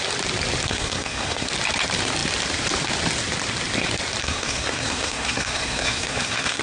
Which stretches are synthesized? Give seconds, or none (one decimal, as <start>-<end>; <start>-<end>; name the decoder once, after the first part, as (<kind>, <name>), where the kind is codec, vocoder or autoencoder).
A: 0.7-1.5 (codec, SNAC); 4.2-6.6